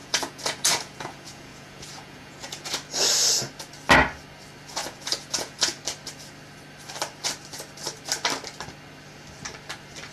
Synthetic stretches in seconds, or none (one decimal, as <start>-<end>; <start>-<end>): 0.0-2.7; 4.8-5.8